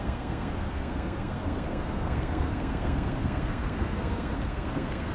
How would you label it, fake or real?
fake